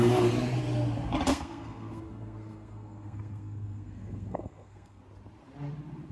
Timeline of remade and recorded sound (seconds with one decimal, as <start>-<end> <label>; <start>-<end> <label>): 0.0-1.3 recorded; 1.3-5.0 remade; 5.0-6.1 recorded